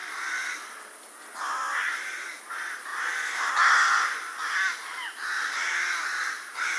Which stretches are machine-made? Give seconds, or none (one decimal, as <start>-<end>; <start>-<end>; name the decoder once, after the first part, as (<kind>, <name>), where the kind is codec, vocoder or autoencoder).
0.0-2.4 (vocoder, BigVGAN v2); 2.9-3.5